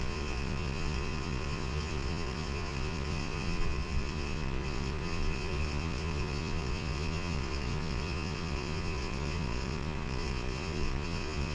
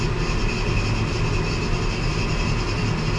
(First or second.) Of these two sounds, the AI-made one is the first